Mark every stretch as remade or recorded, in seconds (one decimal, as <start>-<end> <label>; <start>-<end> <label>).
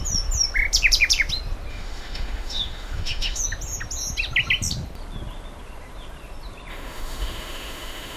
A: 0.0-1.7 recorded; 1.7-3.4 remade; 3.4-6.7 recorded; 6.7-8.2 remade